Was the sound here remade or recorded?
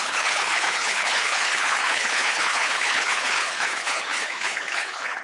remade